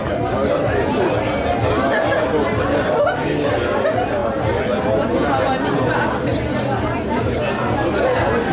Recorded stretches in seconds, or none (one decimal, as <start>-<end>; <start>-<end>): 0.0-8.5